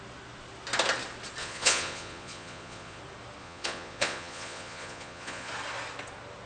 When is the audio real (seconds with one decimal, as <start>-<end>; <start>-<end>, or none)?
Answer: 0.0-1.4; 3.0-3.4; 5.5-6.5